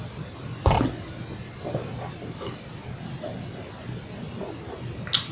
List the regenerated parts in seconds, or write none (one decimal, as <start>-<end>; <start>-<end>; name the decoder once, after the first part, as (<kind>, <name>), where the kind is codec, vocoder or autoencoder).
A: none